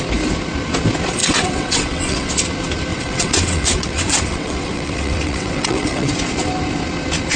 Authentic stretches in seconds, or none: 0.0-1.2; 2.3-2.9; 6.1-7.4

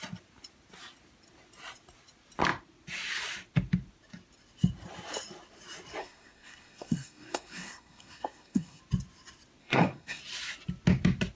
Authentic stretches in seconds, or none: 0.0-6.0; 8.8-9.6; 10.2-11.4

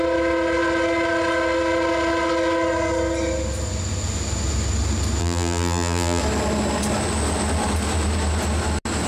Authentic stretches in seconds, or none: 0.0-5.2; 6.2-9.1

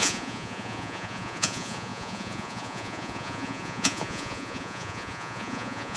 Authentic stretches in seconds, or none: none